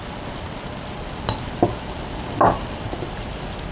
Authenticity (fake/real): real